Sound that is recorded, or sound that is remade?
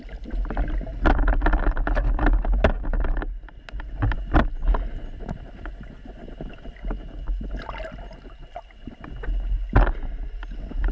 recorded